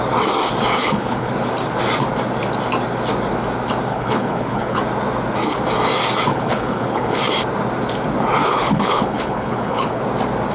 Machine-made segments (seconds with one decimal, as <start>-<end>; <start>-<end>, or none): 0.8-1.3; 3.9-4.8; 6.3-7.2; 8.4-10.0